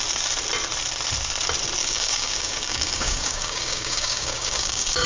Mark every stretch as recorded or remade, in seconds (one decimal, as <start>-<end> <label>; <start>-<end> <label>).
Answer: 0.0-1.8 recorded; 1.8-5.1 remade